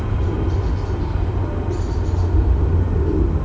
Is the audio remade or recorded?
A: recorded